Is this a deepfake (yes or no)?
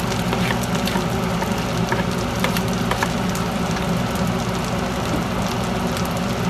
no